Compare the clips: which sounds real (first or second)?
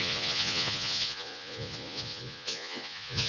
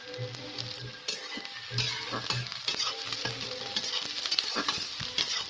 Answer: second